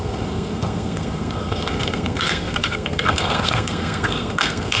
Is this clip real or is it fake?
fake